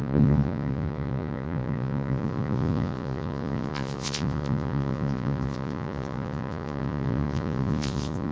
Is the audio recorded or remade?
remade